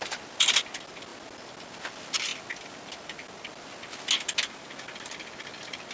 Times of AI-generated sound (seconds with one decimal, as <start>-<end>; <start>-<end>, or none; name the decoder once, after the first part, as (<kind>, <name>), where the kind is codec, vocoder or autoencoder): none